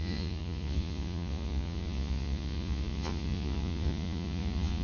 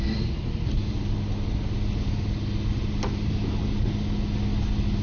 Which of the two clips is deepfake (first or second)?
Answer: first